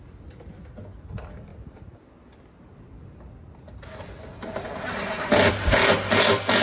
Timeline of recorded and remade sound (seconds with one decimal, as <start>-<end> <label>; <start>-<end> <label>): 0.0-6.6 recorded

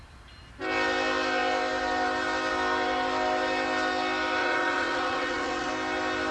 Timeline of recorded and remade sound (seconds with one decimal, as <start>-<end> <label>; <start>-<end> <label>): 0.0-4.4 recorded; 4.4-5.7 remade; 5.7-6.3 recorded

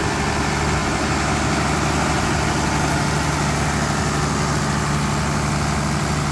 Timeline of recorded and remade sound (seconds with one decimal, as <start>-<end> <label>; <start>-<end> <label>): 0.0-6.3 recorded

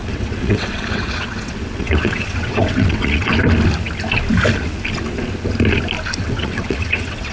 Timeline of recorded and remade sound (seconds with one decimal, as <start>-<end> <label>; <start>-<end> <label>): 0.0-3.3 remade; 3.3-6.2 recorded; 6.2-7.3 remade

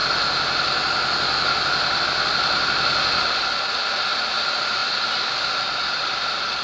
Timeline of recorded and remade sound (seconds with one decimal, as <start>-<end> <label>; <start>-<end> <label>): 0.0-6.6 recorded